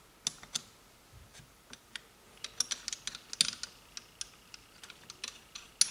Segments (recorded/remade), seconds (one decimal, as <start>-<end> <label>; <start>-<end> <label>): 0.0-1.3 recorded; 1.3-2.0 remade; 2.0-5.9 recorded